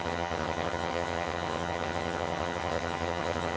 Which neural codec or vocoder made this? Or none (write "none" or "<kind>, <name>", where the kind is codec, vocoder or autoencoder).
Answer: vocoder, HiFi-GAN